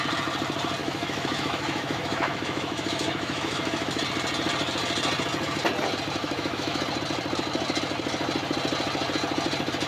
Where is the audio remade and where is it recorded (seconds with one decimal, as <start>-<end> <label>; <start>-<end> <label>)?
0.0-0.8 recorded; 0.8-4.0 remade; 4.0-6.2 recorded; 6.2-6.8 remade; 6.8-9.9 recorded